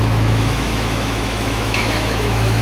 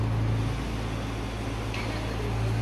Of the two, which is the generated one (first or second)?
first